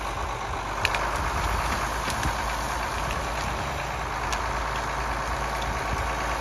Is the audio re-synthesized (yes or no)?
no